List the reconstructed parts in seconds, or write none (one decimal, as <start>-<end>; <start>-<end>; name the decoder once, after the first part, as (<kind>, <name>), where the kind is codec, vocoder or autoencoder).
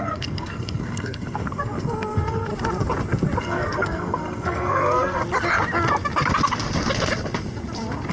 0.0-2.5 (codec, SNAC); 3.4-5.2